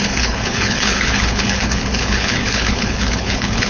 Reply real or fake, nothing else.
fake